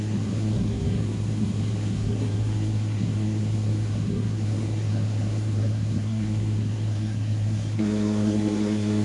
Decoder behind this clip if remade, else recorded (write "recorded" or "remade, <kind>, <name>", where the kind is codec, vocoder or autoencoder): remade, codec, SNAC